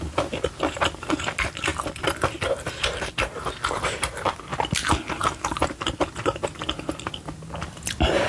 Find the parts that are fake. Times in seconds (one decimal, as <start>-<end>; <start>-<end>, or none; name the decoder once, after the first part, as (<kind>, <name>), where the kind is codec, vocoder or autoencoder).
none